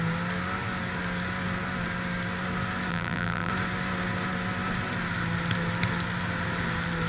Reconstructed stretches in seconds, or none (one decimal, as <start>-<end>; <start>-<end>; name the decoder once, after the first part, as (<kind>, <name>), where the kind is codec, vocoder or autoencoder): 2.9-3.5 (vocoder, BigVGAN v2)